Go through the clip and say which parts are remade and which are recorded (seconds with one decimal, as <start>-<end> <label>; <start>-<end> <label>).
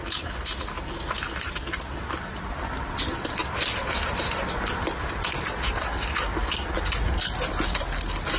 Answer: 0.0-8.4 recorded